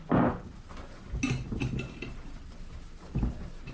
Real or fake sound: real